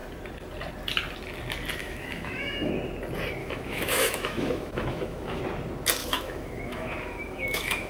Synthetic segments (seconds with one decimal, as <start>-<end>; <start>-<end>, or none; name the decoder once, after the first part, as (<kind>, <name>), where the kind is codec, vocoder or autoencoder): 1.8-2.7 (autoencoder, DAC-VAE); 3.4-5.4; 6.0-7.9